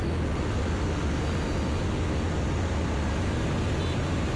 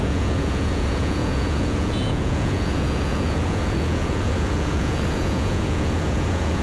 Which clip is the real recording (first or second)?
first